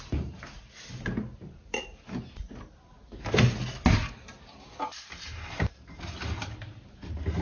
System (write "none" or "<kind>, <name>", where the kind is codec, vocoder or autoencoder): none